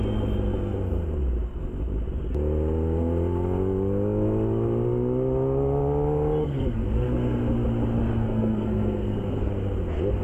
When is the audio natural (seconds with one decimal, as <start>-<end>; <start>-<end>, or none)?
0.0-6.4; 7.4-8.0; 9.5-10.2